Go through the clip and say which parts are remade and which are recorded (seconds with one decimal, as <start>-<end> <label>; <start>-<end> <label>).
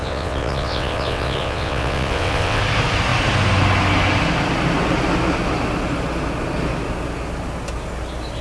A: 0.0-2.6 remade; 2.6-8.4 recorded